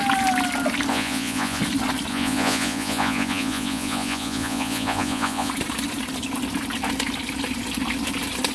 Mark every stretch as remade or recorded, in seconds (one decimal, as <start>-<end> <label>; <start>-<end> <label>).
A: 0.0-0.9 recorded; 0.9-1.6 remade; 1.6-2.1 recorded; 2.1-5.5 remade; 5.5-8.5 recorded